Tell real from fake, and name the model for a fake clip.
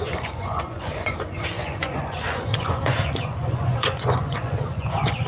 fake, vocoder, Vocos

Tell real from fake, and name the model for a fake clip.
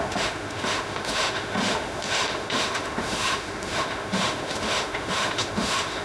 fake, autoencoder, DAC-VAE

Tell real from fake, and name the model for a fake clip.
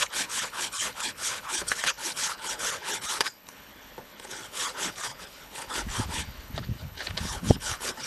fake, codec, HILCodec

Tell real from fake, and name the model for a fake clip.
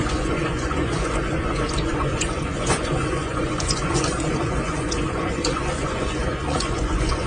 fake, vocoder, Vocos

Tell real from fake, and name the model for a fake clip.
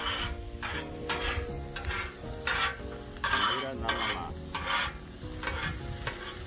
real